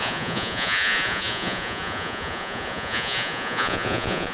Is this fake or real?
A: fake